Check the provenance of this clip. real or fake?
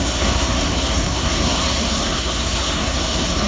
fake